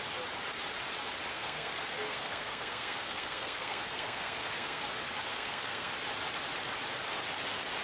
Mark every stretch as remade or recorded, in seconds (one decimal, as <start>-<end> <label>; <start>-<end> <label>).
0.0-1.3 recorded; 1.3-4.8 remade; 4.8-5.3 recorded; 5.3-5.9 remade; 5.9-7.8 recorded